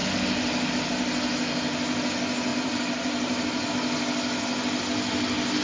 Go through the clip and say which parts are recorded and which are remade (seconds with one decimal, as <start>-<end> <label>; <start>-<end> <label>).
0.0-2.5 recorded; 2.5-3.7 remade; 3.7-5.6 recorded